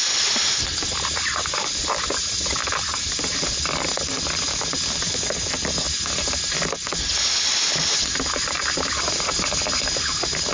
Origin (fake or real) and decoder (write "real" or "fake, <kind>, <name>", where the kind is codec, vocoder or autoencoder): real